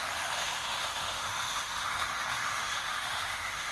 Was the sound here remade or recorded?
remade